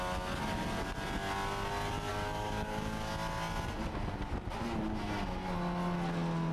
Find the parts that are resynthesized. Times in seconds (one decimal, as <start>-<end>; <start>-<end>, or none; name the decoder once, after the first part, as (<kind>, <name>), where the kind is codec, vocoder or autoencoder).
2.1-3.1 (codec, DAC)